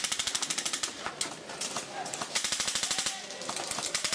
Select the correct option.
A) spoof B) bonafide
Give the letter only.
B